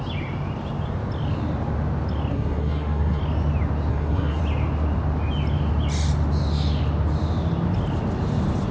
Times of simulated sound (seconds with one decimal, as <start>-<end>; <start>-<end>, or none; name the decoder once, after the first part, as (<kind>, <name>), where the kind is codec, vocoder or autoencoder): 2.3-3.2 (codec, SNAC); 3.9-4.4